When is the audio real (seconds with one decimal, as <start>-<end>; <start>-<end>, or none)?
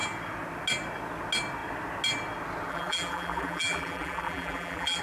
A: 0.0-2.7